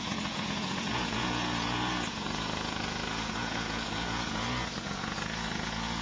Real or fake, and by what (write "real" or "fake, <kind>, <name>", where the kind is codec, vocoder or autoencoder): fake, vocoder, Vocos